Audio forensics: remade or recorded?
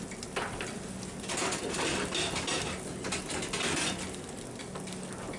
recorded